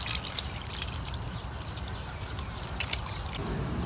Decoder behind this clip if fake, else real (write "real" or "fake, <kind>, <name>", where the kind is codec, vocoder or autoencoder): real